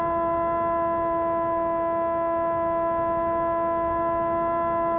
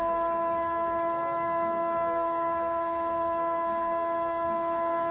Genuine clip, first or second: first